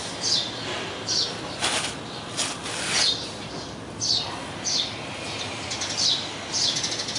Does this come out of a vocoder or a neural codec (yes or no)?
no